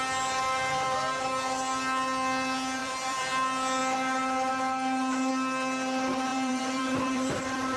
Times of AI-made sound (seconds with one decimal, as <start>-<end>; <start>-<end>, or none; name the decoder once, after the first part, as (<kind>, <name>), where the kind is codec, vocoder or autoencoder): 2.8-3.3 (vocoder, BigVGAN v2); 6.3-7.8